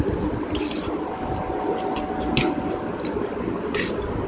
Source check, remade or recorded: recorded